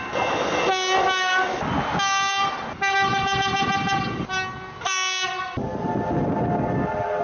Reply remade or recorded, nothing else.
recorded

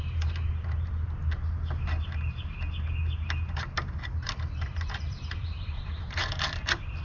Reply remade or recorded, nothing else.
recorded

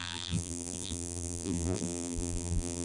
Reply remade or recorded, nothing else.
remade